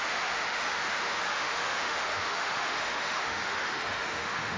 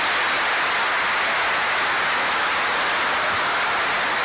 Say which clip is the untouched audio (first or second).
second